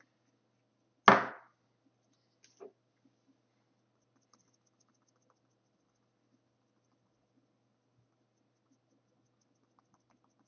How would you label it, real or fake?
real